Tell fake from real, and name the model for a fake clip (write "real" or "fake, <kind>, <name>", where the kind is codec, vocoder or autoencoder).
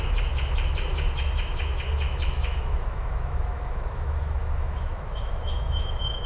fake, autoencoder, DAC-VAE